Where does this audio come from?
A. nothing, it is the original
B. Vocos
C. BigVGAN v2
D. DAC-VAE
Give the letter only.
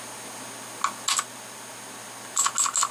A